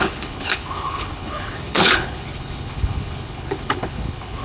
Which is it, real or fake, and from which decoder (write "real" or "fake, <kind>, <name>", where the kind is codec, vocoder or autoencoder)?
fake, codec, HILCodec